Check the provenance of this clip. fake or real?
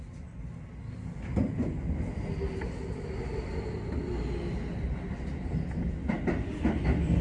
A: real